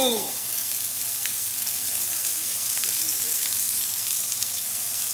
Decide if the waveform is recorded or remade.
remade